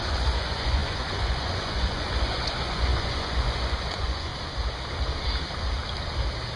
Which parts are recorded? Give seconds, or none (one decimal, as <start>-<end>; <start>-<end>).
4.3-6.6